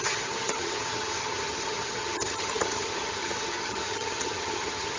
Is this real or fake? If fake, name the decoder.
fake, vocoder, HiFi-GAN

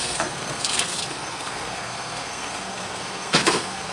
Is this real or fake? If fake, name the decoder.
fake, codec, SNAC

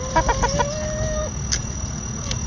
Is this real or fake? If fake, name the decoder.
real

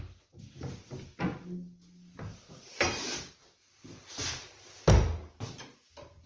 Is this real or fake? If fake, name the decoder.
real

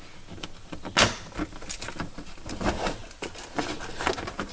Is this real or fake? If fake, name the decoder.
real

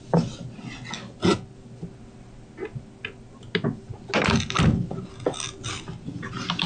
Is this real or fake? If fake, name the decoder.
real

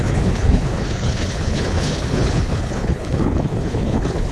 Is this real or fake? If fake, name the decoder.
fake, codec, HILCodec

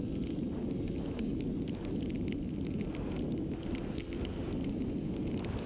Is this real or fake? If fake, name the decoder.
real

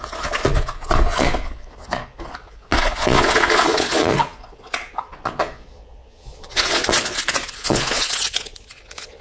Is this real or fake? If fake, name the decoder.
fake, vocoder, Vocos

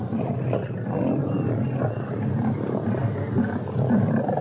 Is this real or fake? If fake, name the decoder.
real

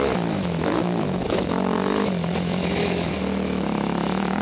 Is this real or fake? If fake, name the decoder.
fake, autoencoder, DAC-VAE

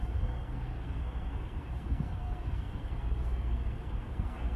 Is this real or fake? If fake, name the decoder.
fake, codec, SNAC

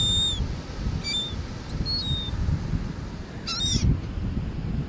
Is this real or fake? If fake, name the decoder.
real